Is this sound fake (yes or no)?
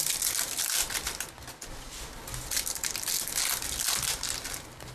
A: no